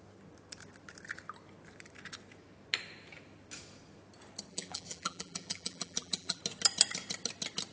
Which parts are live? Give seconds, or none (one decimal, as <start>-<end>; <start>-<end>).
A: 0.0-4.5; 6.4-7.7